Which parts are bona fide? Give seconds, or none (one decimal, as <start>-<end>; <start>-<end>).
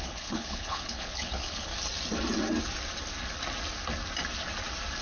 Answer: 1.7-5.0